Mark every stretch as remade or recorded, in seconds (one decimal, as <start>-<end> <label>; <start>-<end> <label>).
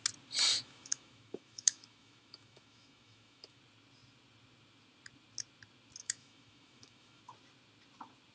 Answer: 0.0-0.5 recorded; 0.5-3.6 remade; 3.6-6.0 recorded; 6.0-7.2 remade; 7.2-8.3 recorded